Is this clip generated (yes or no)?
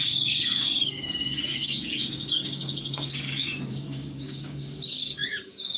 yes